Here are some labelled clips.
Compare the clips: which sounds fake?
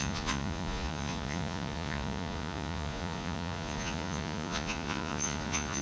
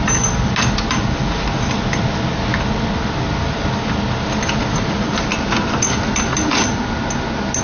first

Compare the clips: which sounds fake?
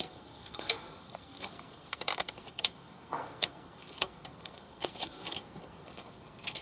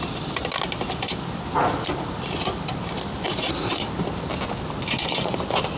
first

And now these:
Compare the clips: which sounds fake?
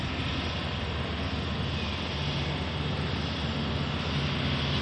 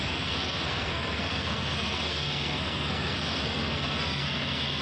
second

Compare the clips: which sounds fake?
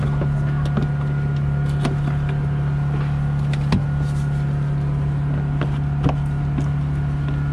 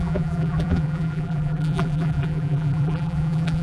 second